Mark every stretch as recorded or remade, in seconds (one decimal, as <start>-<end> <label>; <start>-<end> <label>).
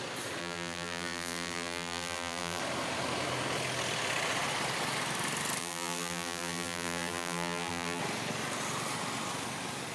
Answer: 0.0-0.4 recorded; 0.4-2.6 remade; 2.6-5.6 recorded; 5.6-8.0 remade; 8.0-9.9 recorded